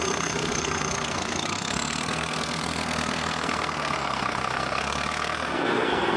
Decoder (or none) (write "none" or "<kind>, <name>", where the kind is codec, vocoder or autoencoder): codec, SNAC